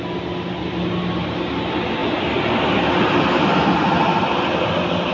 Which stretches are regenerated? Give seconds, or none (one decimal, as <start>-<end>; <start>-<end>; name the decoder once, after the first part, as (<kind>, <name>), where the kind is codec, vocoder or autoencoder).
none